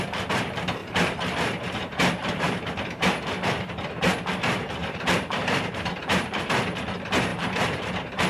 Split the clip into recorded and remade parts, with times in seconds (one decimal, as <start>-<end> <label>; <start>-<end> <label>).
0.0-0.8 recorded; 0.8-3.7 remade; 3.7-4.8 recorded; 4.8-5.9 remade; 5.9-7.3 recorded; 7.3-8.3 remade